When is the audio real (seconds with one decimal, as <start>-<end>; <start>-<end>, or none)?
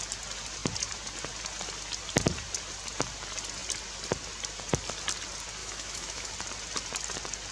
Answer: 0.0-5.6; 6.3-7.5